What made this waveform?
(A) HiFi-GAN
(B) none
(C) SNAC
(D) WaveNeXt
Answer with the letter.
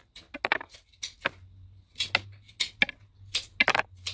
B